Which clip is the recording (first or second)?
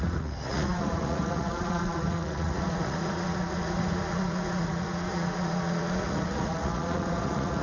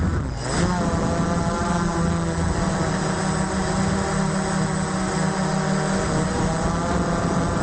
second